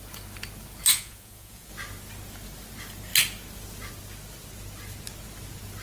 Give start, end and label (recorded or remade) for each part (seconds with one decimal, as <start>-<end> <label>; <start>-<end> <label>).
0.0-0.9 recorded; 0.9-1.7 remade; 1.7-5.8 recorded